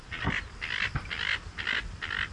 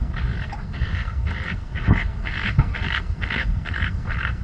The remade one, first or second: second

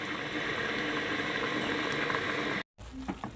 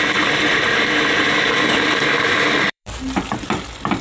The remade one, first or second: second